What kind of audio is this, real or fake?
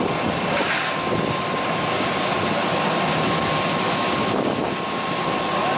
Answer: real